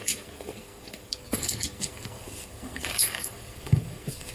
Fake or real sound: fake